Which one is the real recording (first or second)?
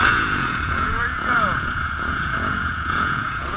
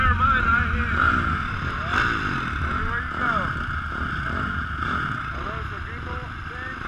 second